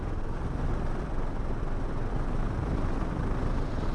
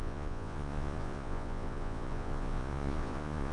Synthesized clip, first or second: second